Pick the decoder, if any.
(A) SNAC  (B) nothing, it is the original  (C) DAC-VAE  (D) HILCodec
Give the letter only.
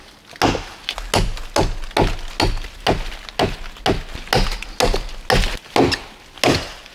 B